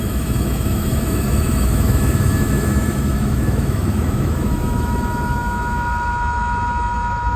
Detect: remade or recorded remade